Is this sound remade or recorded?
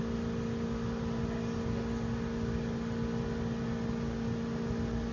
recorded